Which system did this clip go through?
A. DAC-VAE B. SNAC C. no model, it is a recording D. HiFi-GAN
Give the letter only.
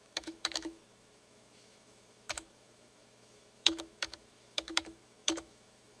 A